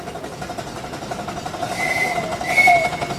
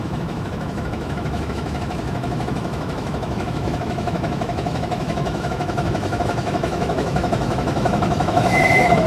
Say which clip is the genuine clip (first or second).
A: first